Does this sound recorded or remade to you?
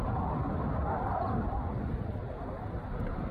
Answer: recorded